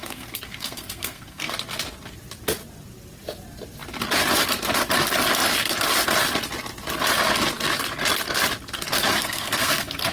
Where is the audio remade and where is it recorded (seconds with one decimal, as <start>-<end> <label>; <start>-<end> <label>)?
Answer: 0.0-1.5 remade; 1.5-9.1 recorded; 9.1-10.1 remade